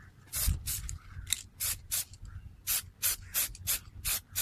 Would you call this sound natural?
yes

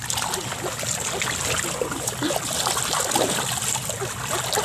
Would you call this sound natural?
yes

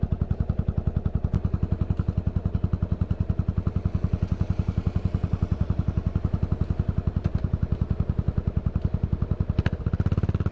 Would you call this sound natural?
yes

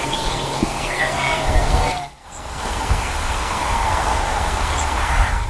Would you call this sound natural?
no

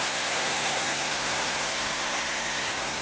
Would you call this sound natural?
no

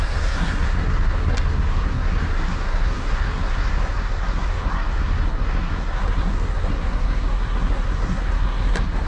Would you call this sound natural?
no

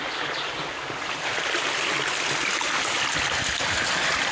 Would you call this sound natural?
yes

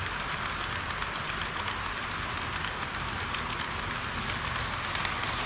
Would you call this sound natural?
yes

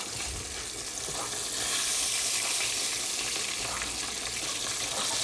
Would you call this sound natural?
yes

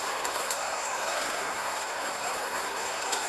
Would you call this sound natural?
no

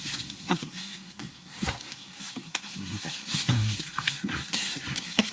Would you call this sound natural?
no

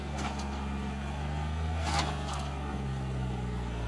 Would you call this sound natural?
no